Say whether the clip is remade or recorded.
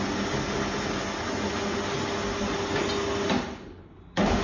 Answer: recorded